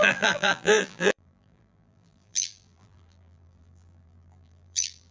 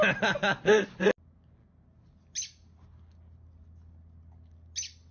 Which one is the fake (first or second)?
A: first